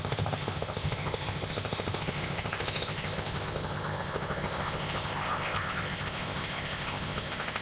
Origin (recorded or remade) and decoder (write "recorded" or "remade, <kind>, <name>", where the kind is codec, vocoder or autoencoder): remade, codec, ZipCodec